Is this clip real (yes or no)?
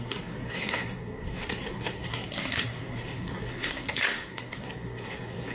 no